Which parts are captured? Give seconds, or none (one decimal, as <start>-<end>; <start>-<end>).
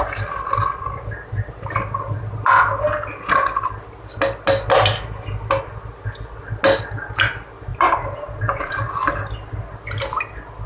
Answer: 0.0-7.7; 8.9-10.7